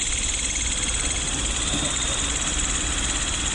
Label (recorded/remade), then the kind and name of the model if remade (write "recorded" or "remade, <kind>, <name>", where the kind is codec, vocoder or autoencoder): recorded